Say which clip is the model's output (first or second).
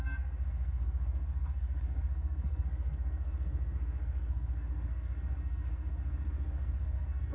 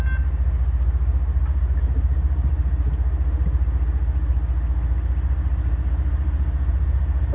first